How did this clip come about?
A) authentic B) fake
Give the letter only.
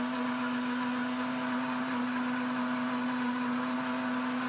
A